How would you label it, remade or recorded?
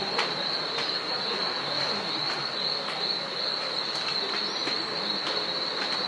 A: recorded